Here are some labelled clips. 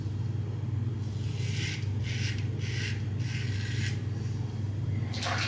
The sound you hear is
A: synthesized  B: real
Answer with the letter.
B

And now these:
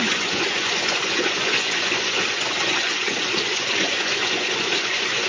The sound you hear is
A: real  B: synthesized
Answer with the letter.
B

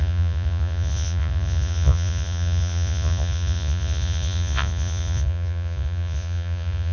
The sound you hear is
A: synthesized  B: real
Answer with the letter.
A